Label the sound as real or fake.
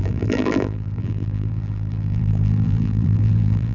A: fake